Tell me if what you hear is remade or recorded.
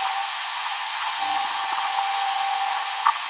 remade